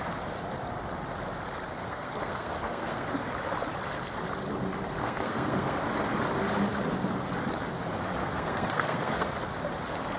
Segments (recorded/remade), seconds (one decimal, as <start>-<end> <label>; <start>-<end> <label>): 0.0-1.8 recorded; 1.8-3.1 remade; 3.1-5.0 recorded; 5.0-5.8 remade; 5.8-8.2 recorded; 8.2-9.3 remade; 9.3-10.2 recorded